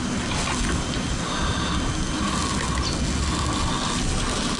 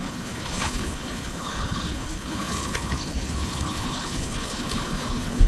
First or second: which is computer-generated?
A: second